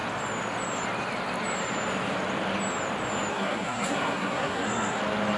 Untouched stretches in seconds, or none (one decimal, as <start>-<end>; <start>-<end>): 0.0-3.3; 5.0-5.4